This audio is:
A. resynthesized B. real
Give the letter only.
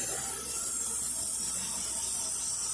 A